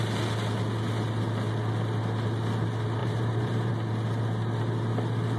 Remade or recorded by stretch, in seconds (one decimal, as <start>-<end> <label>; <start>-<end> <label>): 0.0-3.0 recorded; 3.0-3.7 remade; 3.7-5.4 recorded